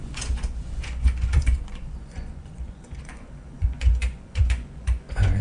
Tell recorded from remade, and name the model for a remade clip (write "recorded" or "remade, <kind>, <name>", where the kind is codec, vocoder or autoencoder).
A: remade, vocoder, Vocos